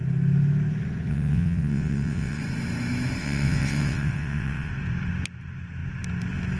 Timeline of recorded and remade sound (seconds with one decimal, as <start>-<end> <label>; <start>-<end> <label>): 0.0-1.1 recorded; 1.1-2.4 remade; 2.4-3.2 recorded; 3.2-4.7 remade; 4.7-6.6 recorded